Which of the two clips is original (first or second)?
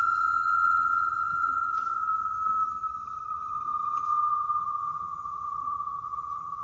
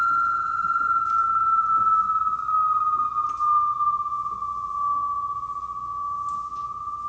second